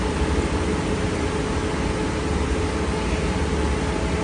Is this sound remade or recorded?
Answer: recorded